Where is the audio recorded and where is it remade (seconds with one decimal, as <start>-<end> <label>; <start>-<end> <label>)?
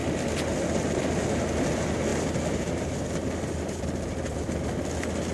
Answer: 0.0-0.6 remade; 0.6-2.1 recorded; 2.1-3.8 remade; 3.8-5.3 recorded